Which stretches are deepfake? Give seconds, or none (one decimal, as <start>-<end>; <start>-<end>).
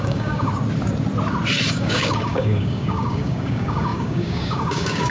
0.0-0.5; 1.7-5.1